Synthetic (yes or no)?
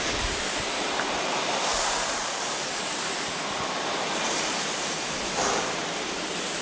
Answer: no